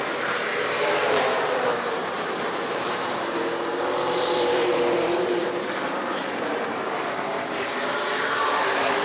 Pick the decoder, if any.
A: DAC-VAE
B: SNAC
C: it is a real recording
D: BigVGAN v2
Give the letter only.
D